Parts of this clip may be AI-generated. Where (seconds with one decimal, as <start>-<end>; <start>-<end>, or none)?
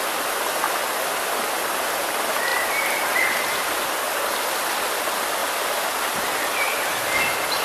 none